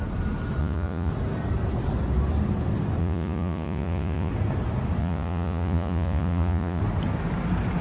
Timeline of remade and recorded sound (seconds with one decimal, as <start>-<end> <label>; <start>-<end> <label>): 0.0-0.6 recorded; 0.6-1.1 remade; 1.1-3.0 recorded; 3.0-4.3 remade; 4.3-5.0 recorded; 5.0-6.8 remade; 6.8-7.8 recorded